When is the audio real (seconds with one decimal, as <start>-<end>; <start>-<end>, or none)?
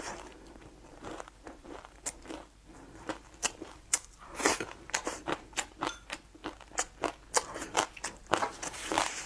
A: 6.4-8.5